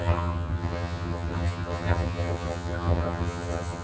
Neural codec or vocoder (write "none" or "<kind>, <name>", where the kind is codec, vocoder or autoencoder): vocoder, HiFi-GAN